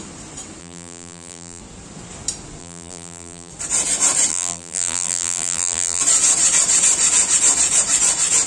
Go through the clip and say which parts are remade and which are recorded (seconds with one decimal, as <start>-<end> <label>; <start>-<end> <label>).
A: 0.0-0.6 recorded; 0.6-1.6 remade; 1.6-2.6 recorded; 2.6-3.5 remade; 3.5-4.3 recorded; 4.3-6.0 remade; 6.0-8.5 recorded